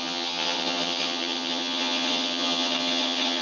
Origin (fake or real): fake